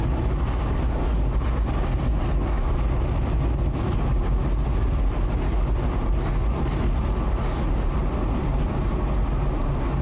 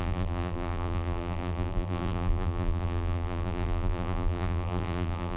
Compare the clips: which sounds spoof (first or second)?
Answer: second